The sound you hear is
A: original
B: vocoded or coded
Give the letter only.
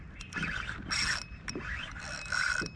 A